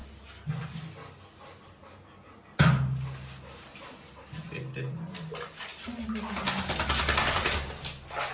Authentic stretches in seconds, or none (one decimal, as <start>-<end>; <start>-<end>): 0.0-8.3